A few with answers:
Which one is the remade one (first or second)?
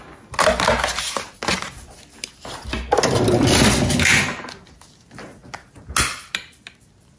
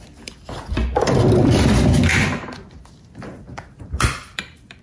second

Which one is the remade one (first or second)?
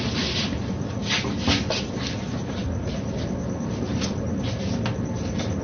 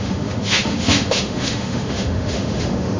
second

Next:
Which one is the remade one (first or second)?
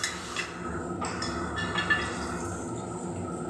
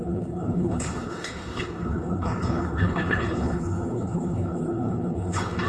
second